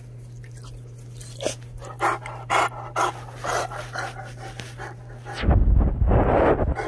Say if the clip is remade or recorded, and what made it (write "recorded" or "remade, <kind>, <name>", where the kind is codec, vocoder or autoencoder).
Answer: recorded